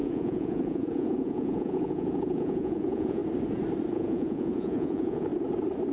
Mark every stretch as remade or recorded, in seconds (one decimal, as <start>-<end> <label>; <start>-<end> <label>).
0.0-3.2 remade; 3.2-3.9 recorded; 3.9-5.3 remade; 5.3-5.9 recorded

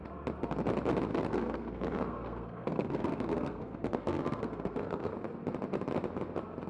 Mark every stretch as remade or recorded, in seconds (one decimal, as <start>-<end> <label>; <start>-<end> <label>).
0.0-1.1 recorded; 1.1-5.1 remade; 5.1-6.7 recorded

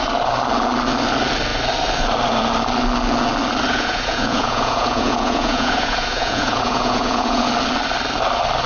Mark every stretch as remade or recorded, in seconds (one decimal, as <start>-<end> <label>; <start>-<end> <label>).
0.0-3.7 recorded; 3.7-7.5 remade; 7.5-8.7 recorded

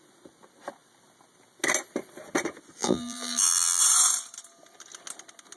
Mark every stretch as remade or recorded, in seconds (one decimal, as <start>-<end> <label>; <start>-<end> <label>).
0.0-2.8 recorded; 2.8-3.8 remade; 3.8-5.6 recorded

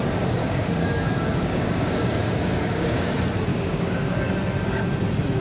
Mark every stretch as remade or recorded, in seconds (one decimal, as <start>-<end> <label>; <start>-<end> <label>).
0.0-0.4 recorded; 0.4-3.1 remade; 3.1-3.5 recorded; 3.5-4.2 remade; 4.2-5.4 recorded

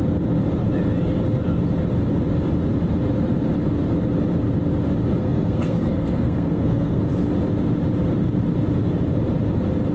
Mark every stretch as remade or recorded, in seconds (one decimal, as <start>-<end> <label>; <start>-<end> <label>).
0.0-5.2 recorded; 5.2-7.0 remade; 7.0-9.9 recorded

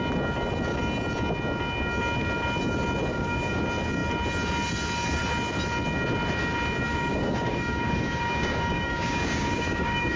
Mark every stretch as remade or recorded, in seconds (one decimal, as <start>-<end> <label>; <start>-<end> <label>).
0.0-3.1 recorded; 3.1-3.6 remade; 3.6-6.9 recorded; 6.9-10.2 remade